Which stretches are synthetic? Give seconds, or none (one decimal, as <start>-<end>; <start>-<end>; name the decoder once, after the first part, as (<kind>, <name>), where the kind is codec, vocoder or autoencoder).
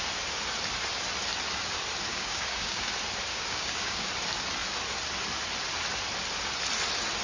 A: 2.1-2.9 (codec, DAC); 3.3-4.1